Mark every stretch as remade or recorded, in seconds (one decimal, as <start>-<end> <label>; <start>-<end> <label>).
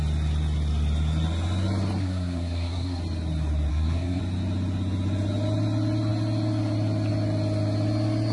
0.0-2.0 recorded; 2.0-3.0 remade; 3.0-3.7 recorded; 3.7-4.2 remade; 4.2-8.3 recorded